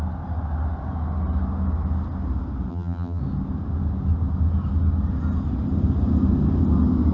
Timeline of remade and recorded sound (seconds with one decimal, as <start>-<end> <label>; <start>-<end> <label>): 0.0-2.7 recorded; 2.7-3.2 remade; 3.2-7.1 recorded